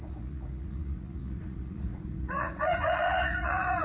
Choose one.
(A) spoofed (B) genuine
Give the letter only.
A